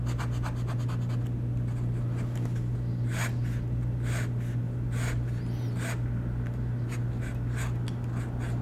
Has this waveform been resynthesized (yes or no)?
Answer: no